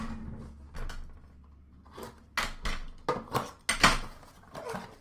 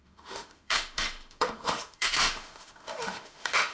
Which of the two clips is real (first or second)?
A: first